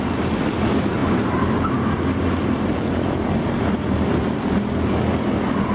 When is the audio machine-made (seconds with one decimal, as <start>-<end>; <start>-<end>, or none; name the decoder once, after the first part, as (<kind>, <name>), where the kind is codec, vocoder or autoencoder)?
none